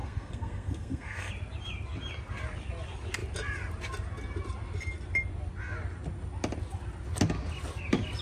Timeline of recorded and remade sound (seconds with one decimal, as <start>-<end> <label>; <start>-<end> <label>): 0.0-1.3 remade; 1.3-8.2 recorded